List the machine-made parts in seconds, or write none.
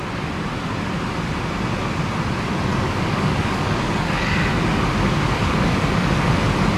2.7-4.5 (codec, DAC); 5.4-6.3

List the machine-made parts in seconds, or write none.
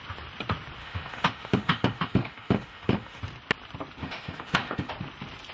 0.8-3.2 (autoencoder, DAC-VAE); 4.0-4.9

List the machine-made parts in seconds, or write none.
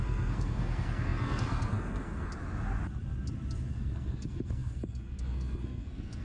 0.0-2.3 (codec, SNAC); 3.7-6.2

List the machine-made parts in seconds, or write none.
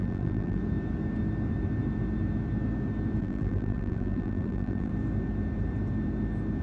0.0-0.6 (vocoder, BigVGAN v2); 3.2-4.9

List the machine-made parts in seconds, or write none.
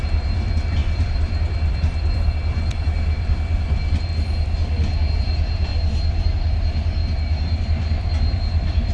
0.0-4.1 (vocoder, BigVGAN v2); 5.2-5.7; 6.4-7.0; 7.6-8.9